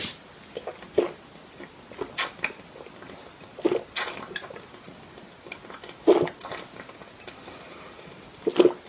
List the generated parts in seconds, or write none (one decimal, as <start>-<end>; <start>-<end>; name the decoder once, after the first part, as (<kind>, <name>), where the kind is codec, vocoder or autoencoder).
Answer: none